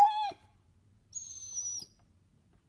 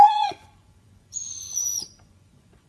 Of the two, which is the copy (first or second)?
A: second